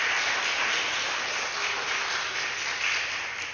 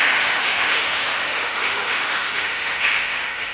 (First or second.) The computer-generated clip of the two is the second